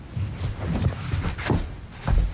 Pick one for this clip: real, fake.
real